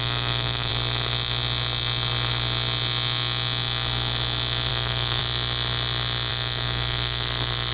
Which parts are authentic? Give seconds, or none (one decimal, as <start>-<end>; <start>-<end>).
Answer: 0.7-4.7; 5.2-6.3